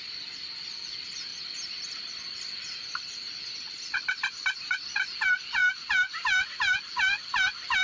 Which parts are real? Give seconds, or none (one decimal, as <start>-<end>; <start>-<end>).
0.0-7.8